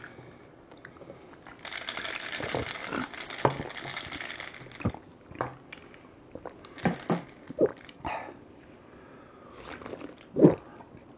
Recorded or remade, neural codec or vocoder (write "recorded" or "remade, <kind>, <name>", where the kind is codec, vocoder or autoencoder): recorded